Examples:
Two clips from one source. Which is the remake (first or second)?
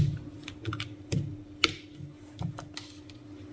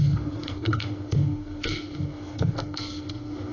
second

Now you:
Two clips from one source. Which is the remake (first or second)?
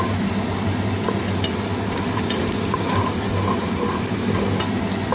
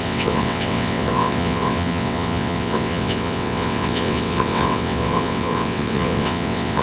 second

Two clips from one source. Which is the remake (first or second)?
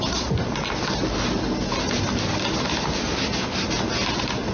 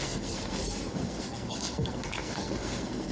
second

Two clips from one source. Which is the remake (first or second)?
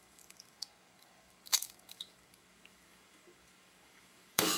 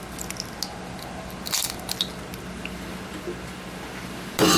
first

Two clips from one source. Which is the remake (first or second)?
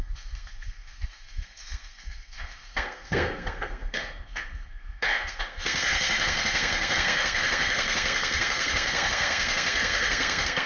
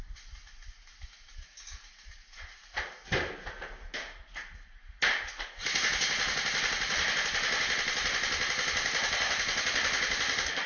first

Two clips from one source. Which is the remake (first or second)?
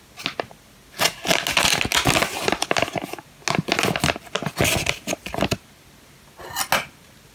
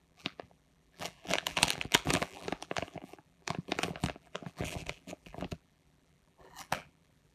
second